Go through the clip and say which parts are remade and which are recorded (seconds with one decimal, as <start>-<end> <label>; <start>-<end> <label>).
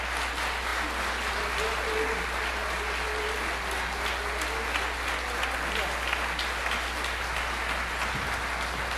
0.0-9.0 recorded